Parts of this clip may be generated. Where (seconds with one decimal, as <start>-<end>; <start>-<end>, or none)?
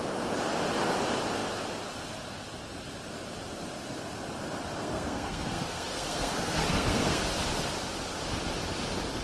4.8-7.2